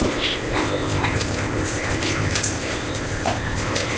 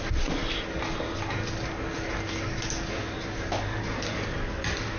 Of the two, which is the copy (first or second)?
first